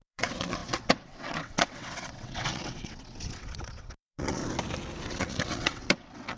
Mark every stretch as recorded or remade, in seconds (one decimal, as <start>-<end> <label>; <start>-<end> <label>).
0.0-4.4 remade; 4.4-5.0 recorded; 5.0-6.4 remade